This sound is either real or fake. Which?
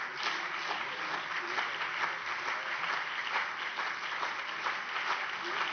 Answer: real